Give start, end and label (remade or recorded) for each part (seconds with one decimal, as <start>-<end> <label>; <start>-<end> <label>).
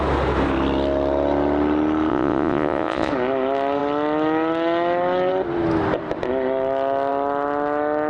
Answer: 0.0-2.1 recorded; 2.1-3.1 remade; 3.1-8.1 recorded